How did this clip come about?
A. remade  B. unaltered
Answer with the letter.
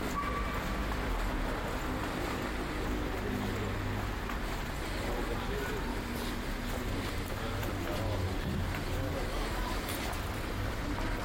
B